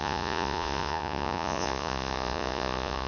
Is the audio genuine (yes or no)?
no